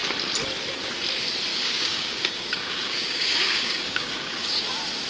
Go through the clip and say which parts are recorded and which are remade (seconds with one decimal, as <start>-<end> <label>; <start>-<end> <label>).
0.0-1.5 recorded; 1.5-4.6 remade; 4.6-5.1 recorded